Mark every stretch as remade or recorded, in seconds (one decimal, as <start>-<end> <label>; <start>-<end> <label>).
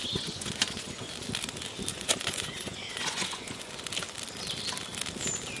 0.0-1.1 remade; 1.1-1.9 recorded; 1.9-3.7 remade; 3.7-5.6 recorded